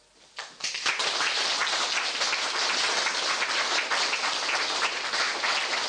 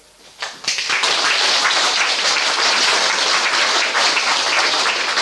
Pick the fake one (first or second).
second